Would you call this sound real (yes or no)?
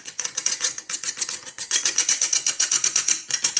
no